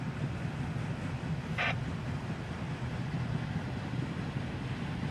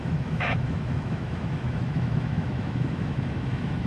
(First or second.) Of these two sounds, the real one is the first